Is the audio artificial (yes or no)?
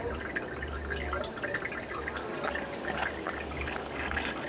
no